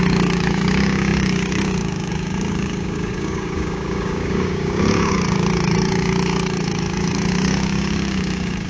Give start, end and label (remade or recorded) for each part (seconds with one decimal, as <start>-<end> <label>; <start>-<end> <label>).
0.0-8.7 remade